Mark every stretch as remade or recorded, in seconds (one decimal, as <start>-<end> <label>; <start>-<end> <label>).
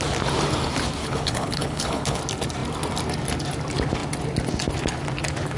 0.0-1.0 recorded; 1.0-2.2 remade; 2.2-5.6 recorded